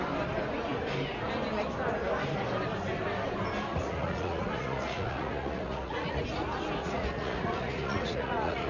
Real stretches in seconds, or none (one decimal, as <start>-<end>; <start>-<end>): 0.0-3.7; 6.2-6.8